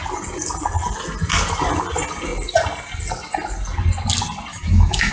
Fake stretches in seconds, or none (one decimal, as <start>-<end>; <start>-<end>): 4.5-5.1